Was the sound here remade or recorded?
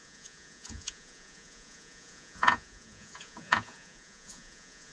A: remade